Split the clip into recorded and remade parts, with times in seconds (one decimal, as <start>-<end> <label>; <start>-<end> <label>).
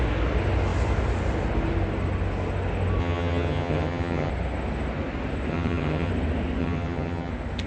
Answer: 0.0-3.0 recorded; 3.0-4.3 remade; 4.3-5.5 recorded; 5.5-6.1 remade; 6.1-6.6 recorded; 6.6-7.3 remade; 7.3-7.7 recorded